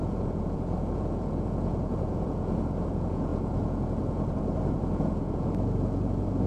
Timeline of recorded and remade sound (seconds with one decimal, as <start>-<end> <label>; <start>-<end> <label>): 0.0-6.5 remade

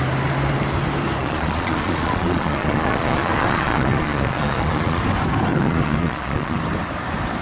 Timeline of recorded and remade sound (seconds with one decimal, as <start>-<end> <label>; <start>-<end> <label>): 0.0-1.2 recorded; 1.2-5.0 remade; 5.0-5.5 recorded; 5.5-6.6 remade; 6.6-7.4 recorded

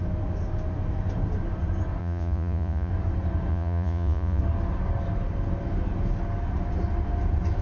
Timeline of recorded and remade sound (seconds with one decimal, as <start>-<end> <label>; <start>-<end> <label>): 0.0-2.0 recorded; 2.0-2.9 remade; 2.9-3.5 recorded; 3.5-4.4 remade; 4.4-7.6 recorded

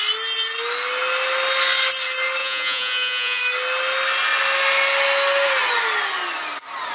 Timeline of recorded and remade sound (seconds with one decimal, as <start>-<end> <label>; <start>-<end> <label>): 0.0-2.4 recorded; 2.4-3.4 remade; 3.4-6.9 recorded

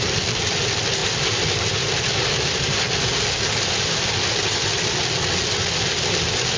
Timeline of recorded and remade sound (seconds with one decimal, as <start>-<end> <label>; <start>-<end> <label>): 0.0-6.6 recorded

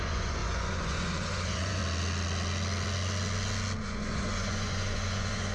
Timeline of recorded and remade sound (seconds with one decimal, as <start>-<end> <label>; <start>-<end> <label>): 0.0-1.8 remade; 1.8-3.8 recorded; 3.8-5.5 remade

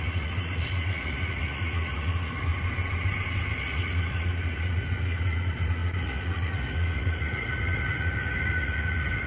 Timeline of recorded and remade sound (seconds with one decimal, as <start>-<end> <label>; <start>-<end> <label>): 0.0-2.5 remade; 2.5-3.6 recorded; 3.6-9.3 remade